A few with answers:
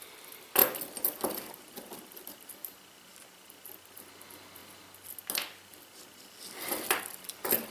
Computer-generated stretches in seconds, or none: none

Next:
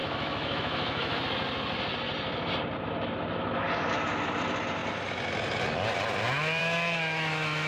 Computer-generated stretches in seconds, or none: 0.0-1.2 (autoencoder, DAC-VAE); 6.6-7.7

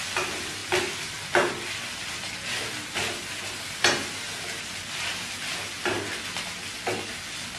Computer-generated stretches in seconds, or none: none